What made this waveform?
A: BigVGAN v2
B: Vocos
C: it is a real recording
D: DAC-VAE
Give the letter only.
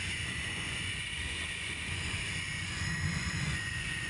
B